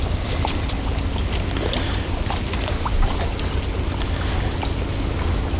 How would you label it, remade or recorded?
recorded